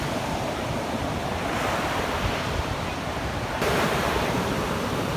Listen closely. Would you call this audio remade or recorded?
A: recorded